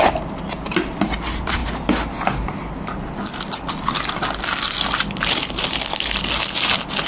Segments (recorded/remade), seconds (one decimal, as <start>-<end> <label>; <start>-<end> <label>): 0.0-7.1 recorded